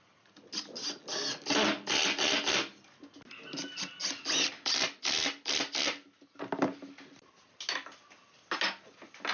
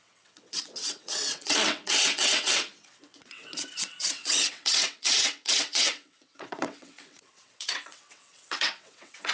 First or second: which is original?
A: first